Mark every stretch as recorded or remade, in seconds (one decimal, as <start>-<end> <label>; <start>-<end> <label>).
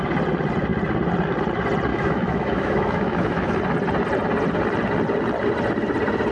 0.0-1.9 recorded; 1.9-3.6 remade; 3.6-6.3 recorded